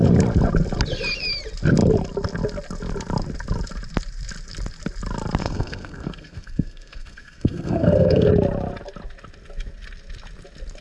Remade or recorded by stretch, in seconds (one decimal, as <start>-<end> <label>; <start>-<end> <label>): 0.0-5.4 recorded; 5.4-8.3 remade; 8.3-10.8 recorded